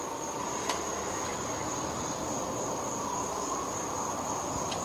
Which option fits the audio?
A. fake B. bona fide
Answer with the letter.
A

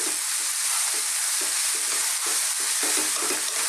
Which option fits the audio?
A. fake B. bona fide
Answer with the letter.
B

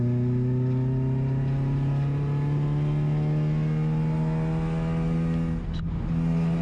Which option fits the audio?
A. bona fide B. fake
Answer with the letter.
A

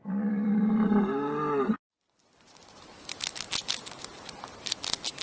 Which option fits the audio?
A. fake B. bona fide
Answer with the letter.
A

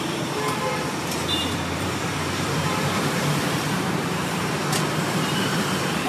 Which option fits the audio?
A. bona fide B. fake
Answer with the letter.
B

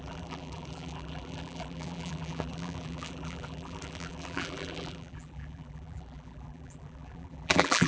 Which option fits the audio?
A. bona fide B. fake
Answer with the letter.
B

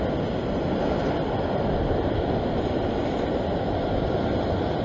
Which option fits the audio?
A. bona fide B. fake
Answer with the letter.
A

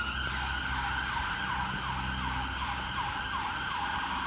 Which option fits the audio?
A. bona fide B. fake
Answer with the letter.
A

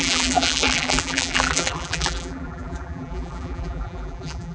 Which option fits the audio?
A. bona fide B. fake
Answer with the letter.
B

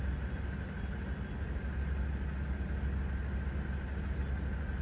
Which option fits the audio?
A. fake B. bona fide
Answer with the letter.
B